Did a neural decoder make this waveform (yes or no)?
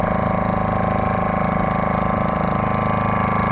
no